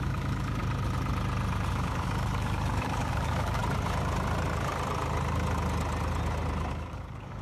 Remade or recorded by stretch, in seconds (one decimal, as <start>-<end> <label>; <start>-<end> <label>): 0.0-0.6 remade; 0.6-1.7 recorded; 1.7-3.6 remade; 3.6-6.7 recorded; 6.7-7.4 remade